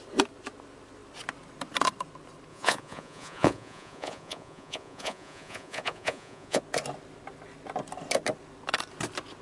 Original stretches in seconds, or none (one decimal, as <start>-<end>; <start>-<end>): 0.0-2.5; 6.6-9.4